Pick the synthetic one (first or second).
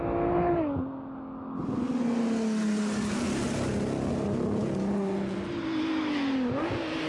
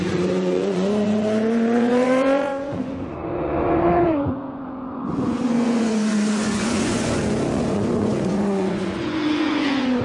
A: second